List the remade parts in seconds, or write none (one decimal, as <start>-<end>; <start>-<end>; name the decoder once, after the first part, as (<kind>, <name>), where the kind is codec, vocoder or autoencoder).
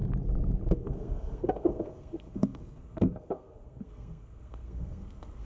0.7-5.4 (codec, SNAC)